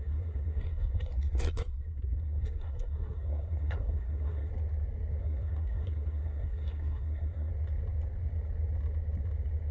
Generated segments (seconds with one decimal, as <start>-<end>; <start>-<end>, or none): 0.0-4.5; 5.2-7.5